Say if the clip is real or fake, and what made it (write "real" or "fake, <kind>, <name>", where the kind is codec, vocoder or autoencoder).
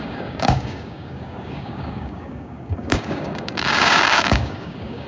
fake, codec, DAC